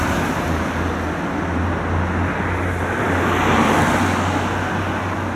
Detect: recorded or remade recorded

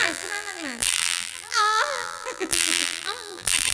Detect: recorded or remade remade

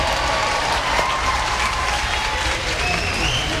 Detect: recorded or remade remade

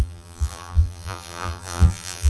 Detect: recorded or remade remade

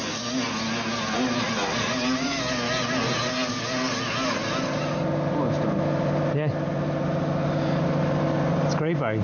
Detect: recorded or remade recorded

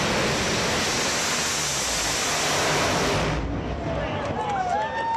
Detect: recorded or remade recorded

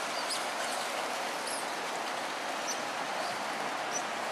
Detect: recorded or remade recorded